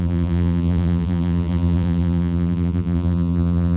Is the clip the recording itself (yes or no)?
no